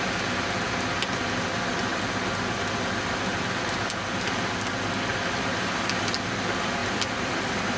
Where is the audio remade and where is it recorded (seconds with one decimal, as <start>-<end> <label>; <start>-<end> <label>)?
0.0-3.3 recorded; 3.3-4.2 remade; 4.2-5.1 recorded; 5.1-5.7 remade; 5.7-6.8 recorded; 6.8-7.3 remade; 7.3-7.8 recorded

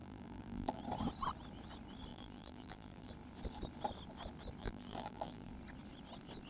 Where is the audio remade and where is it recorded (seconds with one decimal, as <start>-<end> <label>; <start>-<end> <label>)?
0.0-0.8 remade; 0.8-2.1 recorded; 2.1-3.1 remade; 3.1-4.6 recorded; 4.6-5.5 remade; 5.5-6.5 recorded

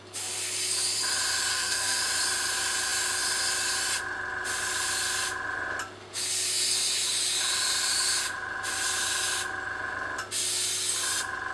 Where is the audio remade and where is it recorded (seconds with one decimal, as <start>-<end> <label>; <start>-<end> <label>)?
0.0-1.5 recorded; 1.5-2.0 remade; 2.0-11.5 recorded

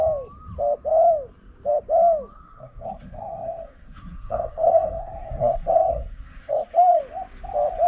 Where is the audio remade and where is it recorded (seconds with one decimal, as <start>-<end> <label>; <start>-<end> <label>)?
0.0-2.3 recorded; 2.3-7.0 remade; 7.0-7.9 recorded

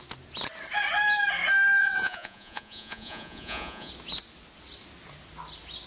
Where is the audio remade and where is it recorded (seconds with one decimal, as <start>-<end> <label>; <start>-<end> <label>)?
0.0-1.8 recorded; 1.8-3.9 remade; 3.9-5.9 recorded